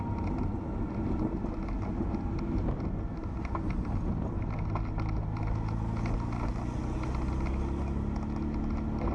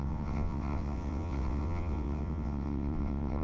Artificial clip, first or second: second